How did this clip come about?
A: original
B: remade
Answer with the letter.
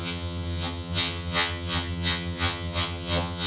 B